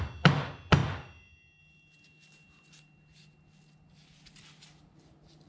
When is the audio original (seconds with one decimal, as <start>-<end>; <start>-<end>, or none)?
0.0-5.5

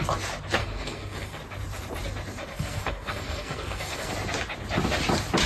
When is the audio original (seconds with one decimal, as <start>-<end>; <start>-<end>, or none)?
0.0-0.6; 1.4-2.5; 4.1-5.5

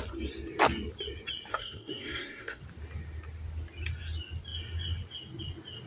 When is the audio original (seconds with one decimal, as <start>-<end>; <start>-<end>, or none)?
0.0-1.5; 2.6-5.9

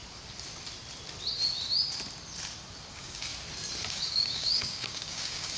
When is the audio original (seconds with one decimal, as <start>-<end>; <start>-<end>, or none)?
0.0-2.9; 3.3-3.9

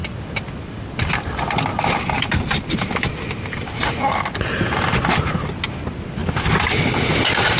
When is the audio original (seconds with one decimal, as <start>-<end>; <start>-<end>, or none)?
4.0-7.6

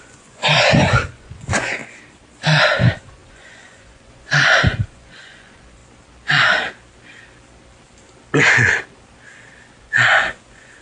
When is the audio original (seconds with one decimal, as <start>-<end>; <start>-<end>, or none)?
1.8-2.6; 5.8-9.8